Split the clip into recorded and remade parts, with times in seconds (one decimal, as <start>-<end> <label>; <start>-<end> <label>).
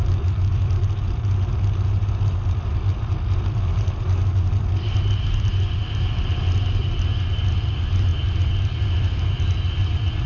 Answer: 0.0-10.3 recorded